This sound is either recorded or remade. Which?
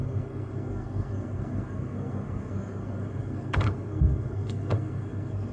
remade